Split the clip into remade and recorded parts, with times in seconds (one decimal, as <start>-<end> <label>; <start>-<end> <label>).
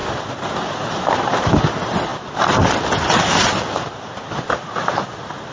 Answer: 0.0-1.0 remade; 1.0-5.5 recorded